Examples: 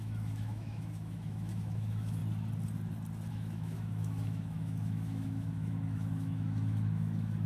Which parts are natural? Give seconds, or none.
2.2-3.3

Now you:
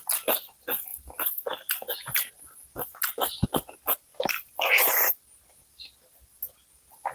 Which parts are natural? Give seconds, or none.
0.0-7.1

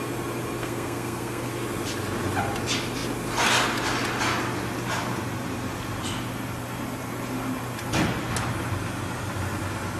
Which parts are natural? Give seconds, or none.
0.0-0.6; 1.5-10.0

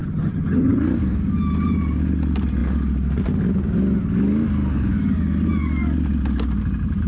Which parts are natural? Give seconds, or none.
0.8-7.1

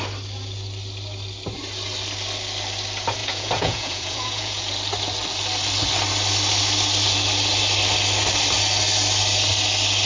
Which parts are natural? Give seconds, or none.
0.0-3.2; 4.7-10.1

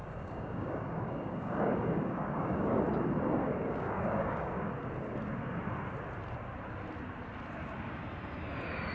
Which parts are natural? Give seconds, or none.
2.8-3.4; 4.7-8.9

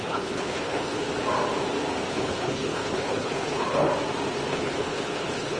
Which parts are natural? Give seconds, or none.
1.1-2.1; 3.9-4.5